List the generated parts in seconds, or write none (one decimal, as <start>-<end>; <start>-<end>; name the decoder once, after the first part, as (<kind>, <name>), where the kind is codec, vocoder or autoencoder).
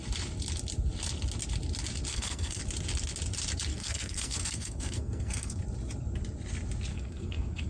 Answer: 2.1-2.6 (codec, SNAC); 3.7-5.6; 6.9-7.7